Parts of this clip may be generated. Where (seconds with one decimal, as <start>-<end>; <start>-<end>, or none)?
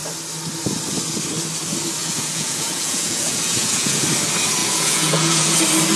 2.0-4.0; 4.6-5.6